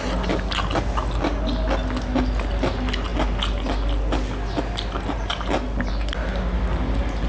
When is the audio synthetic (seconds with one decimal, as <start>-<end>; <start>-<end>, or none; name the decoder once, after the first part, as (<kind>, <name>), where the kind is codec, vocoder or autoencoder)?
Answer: none